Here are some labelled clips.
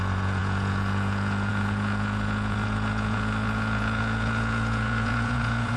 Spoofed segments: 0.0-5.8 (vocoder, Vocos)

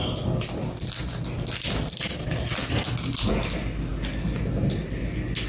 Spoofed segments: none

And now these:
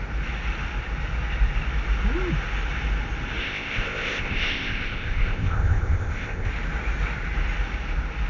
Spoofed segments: 3.4-6.5 (codec, ZipCodec)